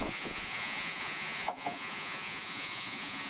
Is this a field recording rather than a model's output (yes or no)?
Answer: no